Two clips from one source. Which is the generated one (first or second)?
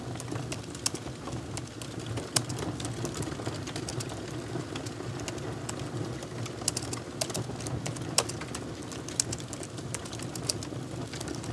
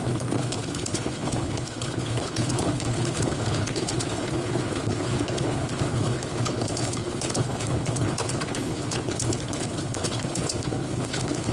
second